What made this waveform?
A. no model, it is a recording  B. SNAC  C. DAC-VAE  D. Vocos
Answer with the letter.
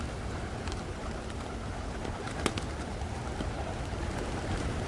A